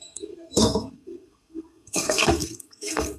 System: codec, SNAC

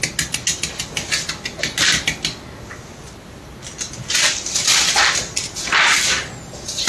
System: none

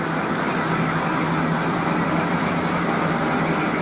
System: none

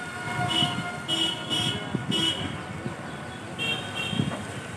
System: none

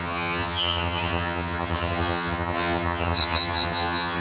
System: vocoder, HiFi-GAN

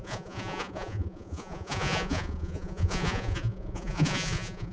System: vocoder, Vocos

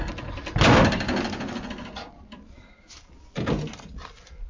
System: vocoder, BigVGAN v2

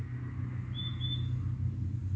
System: none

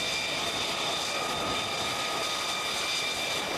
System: none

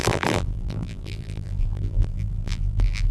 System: vocoder, BigVGAN v2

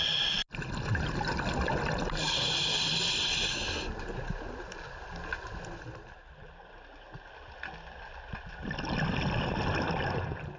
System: none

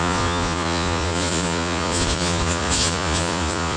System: vocoder, Vocos